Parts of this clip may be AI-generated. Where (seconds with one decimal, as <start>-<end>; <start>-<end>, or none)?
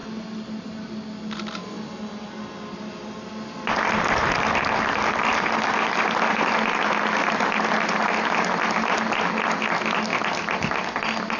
none